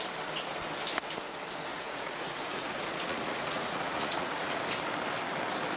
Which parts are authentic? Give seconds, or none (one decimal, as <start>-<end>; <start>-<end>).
0.0-1.7; 4.6-5.8

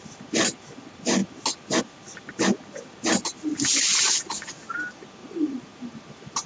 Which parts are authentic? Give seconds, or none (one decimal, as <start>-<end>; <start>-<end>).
0.0-3.9; 4.7-5.2; 5.8-6.5

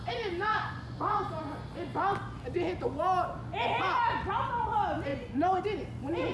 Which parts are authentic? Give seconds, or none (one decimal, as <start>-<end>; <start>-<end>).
0.0-0.5; 1.3-5.1; 5.6-6.3

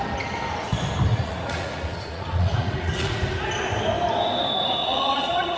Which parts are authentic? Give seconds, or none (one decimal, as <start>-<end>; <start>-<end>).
0.0-1.1; 3.1-4.8

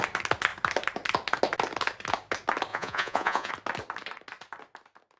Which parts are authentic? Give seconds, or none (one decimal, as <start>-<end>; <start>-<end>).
0.0-2.7; 3.5-5.2